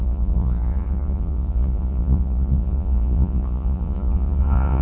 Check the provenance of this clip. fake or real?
fake